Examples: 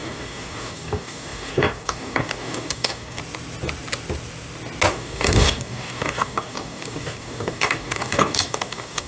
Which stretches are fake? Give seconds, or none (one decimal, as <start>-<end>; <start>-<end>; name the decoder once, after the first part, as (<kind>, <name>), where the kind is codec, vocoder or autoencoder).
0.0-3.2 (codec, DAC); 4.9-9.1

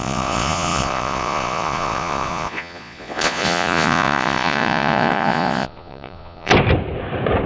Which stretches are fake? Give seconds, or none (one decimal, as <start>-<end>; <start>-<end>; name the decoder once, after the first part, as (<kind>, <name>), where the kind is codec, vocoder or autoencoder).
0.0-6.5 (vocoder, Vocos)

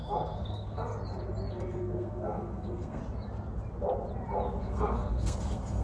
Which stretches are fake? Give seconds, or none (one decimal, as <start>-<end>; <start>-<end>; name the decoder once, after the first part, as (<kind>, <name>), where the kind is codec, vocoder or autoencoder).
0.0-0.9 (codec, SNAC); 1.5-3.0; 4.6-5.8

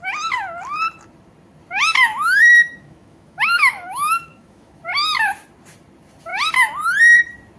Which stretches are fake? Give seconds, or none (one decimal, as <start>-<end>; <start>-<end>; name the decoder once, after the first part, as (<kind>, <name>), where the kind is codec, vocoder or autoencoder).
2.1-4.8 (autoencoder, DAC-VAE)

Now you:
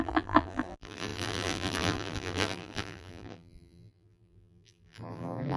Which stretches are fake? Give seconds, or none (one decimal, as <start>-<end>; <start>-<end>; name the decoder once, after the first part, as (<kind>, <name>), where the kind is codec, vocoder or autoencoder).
0.0-5.6 (vocoder, BigVGAN v2)